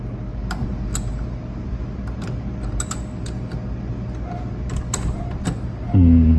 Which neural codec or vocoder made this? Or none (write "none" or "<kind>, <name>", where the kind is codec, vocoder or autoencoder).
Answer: none